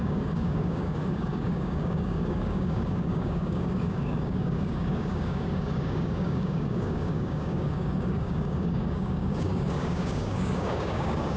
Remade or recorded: remade